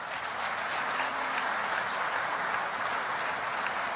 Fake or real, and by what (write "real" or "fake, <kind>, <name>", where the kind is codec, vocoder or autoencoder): real